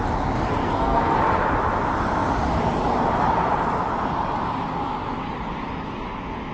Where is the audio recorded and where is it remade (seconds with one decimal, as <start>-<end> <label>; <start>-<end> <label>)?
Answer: 0.0-0.6 recorded; 0.6-1.2 remade; 1.2-6.5 recorded